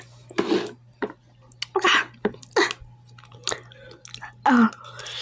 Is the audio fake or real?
real